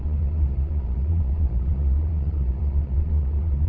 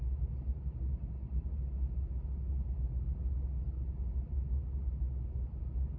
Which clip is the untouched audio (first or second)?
second